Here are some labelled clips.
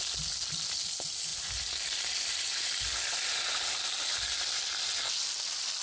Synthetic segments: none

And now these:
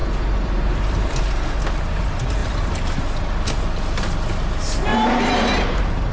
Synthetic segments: 0.0-1.2 (vocoder, BigVGAN v2); 2.4-3.0; 4.9-6.1

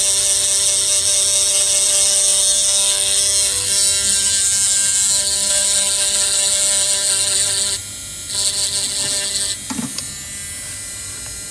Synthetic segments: none